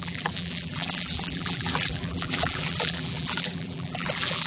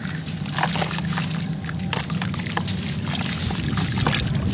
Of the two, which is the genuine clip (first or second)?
second